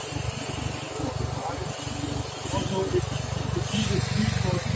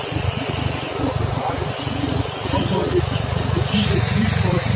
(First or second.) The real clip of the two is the first